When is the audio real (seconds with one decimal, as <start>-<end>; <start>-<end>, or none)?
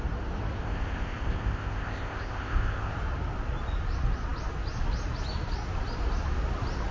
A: 0.0-0.6; 2.9-6.9